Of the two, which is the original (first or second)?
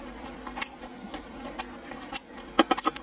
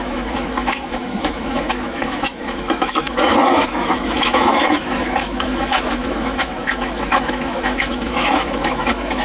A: first